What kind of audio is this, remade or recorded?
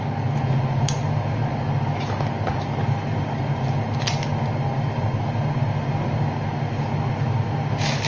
recorded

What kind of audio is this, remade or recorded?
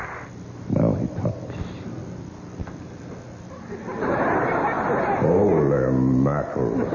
recorded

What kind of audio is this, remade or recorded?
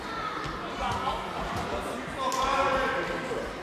recorded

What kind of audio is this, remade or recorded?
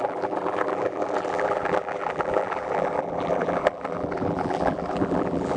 remade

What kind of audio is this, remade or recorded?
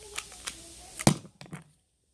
recorded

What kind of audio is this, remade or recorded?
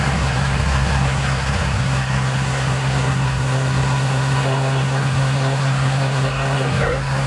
remade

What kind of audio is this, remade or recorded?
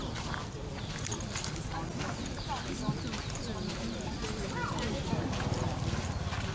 recorded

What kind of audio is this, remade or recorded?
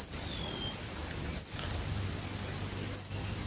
recorded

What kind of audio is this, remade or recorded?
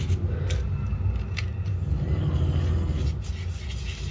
recorded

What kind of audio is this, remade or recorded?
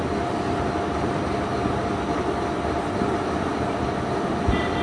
recorded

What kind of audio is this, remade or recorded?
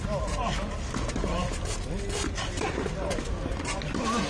recorded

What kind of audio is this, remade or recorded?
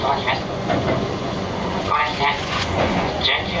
remade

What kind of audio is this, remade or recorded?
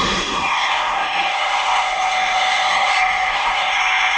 remade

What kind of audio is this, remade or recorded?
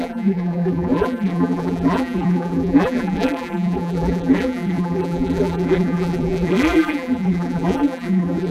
remade